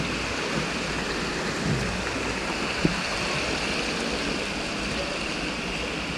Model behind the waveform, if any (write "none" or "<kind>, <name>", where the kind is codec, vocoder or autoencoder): none